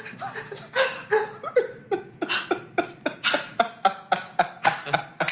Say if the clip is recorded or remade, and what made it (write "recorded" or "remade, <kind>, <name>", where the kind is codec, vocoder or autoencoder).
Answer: recorded